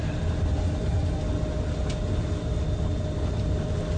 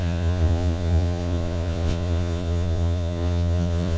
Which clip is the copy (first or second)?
second